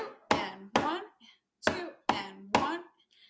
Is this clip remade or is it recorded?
recorded